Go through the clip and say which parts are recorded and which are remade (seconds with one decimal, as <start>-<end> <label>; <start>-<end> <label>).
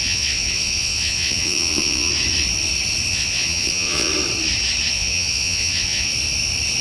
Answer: 0.0-2.1 remade; 2.1-3.1 recorded; 3.1-4.1 remade; 4.1-4.9 recorded; 4.9-6.1 remade; 6.1-6.8 recorded